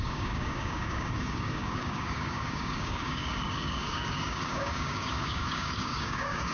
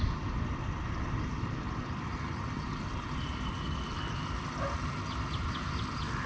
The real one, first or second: second